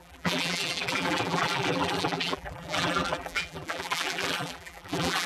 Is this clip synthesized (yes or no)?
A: yes